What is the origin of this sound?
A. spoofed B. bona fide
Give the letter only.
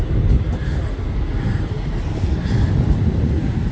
B